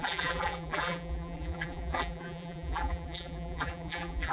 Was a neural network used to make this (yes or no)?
yes